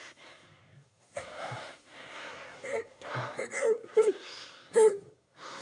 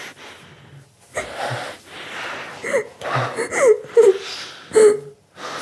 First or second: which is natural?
second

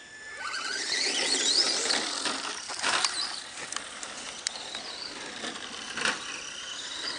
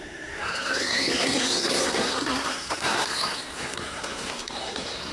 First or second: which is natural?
first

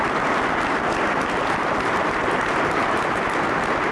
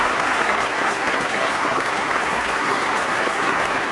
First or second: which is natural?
first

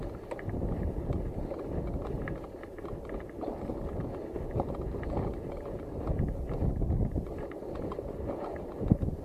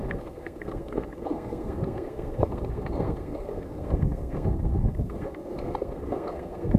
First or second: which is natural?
first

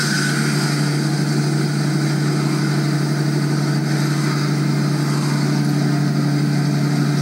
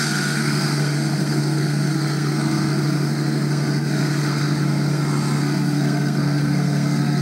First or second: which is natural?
first